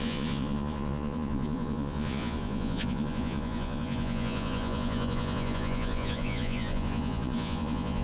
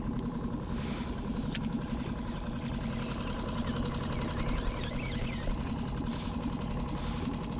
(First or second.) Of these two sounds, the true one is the second